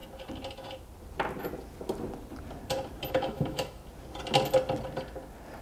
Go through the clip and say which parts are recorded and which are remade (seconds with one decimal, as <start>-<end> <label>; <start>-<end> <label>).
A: 0.0-3.1 recorded; 3.1-3.8 remade; 3.8-5.6 recorded